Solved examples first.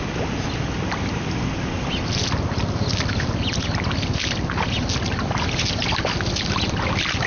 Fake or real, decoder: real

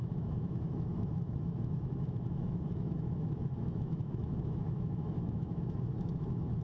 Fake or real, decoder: fake, autoencoder, DAC-VAE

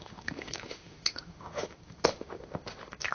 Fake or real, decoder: fake, autoencoder, DAC-VAE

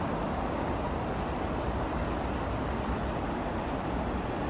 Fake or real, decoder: real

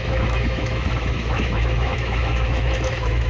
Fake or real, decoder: fake, autoencoder, DAC-VAE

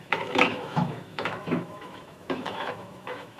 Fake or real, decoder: fake, autoencoder, DAC-VAE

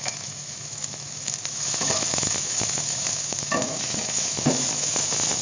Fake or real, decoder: fake, autoencoder, DAC-VAE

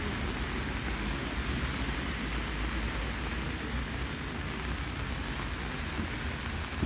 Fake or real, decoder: real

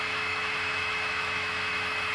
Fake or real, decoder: fake, autoencoder, DAC-VAE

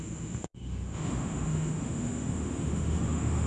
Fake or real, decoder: fake, autoencoder, DAC-VAE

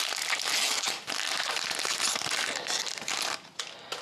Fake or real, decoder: real